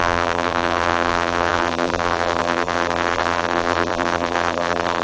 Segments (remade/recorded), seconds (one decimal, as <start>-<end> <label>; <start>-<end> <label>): 0.0-5.0 remade